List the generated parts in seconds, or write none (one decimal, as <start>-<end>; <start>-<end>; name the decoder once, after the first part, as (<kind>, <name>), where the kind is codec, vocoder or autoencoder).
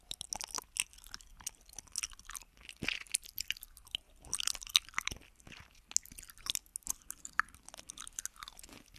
3.0-5.0 (vocoder, BigVGAN v2)